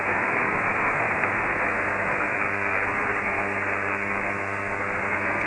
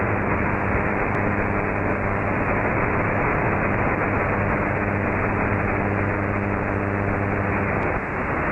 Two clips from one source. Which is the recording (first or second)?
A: second